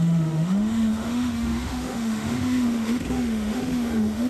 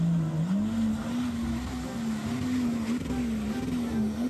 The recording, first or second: second